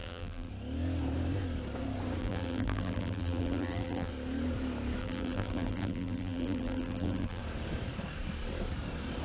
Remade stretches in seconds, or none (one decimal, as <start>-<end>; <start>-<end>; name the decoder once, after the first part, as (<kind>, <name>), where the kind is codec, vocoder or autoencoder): 0.0-0.5 (vocoder, BigVGAN v2); 2.2-4.1; 5.0-7.4